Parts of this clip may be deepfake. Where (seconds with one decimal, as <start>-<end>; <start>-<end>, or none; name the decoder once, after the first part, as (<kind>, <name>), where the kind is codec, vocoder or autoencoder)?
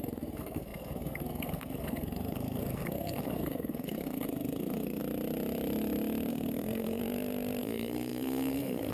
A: 0.0-5.0 (codec, SNAC); 6.3-7.0; 7.6-8.9